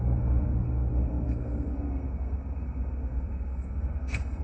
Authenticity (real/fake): fake